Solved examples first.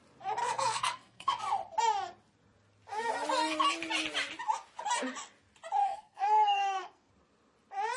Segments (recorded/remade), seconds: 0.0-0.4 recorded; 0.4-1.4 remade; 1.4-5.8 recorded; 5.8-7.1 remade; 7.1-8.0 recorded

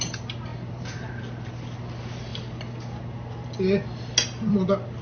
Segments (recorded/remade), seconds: 0.0-0.5 recorded; 0.5-1.1 remade; 1.1-5.0 recorded

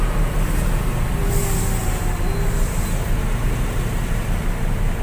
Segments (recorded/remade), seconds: 0.0-5.0 recorded

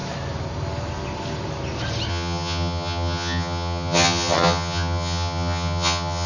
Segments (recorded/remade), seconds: 0.0-2.1 recorded; 2.1-6.3 remade